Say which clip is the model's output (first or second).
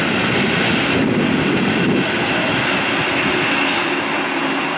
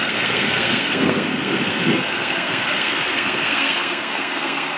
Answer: second